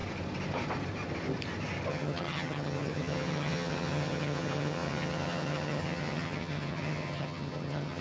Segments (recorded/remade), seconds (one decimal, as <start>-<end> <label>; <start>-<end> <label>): 0.0-1.9 recorded; 1.9-8.0 remade